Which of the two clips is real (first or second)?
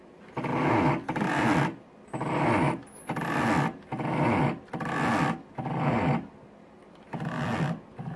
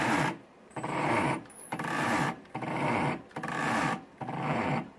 first